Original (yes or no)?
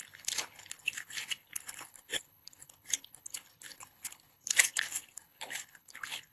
no